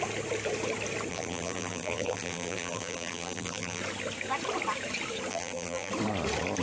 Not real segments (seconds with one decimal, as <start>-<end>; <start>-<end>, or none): 1.1-3.8; 5.3-5.9